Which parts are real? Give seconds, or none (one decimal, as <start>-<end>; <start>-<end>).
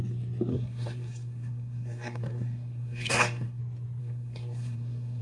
0.0-0.5; 3.6-4.0